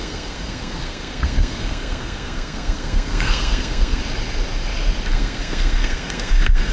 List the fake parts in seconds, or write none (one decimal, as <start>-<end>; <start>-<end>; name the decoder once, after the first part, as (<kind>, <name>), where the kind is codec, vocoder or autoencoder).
0.0-4.0 (codec, SNAC); 5.1-6.7